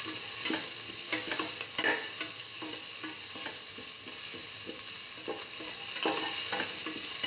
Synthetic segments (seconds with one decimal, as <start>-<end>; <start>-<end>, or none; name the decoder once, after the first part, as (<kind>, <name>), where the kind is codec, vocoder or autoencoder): none